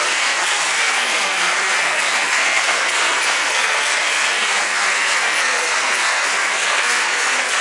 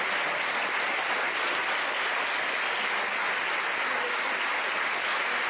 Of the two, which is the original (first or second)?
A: second